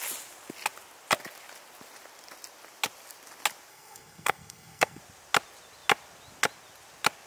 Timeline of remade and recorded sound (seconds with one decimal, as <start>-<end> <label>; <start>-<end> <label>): 0.0-3.7 recorded; 3.7-5.0 remade; 5.0-7.3 recorded